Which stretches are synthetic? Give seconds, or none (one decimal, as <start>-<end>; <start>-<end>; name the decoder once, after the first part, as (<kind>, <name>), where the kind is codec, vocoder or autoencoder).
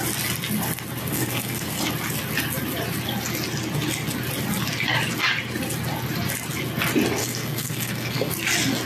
1.0-1.8 (codec, SNAC); 7.2-8.3